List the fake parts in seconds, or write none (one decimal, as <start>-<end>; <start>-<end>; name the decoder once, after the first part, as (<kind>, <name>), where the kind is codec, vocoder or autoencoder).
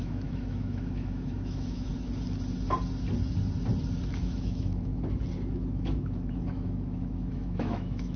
0.0-1.9 (autoencoder, DAC-VAE); 4.1-4.9; 5.5-8.2